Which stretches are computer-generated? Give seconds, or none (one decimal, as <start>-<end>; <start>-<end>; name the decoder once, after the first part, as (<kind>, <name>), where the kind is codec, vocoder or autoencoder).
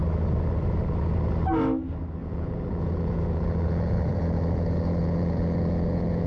2.2-6.3 (vocoder, Vocos)